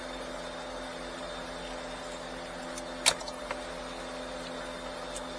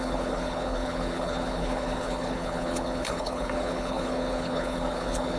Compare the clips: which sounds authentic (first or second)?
first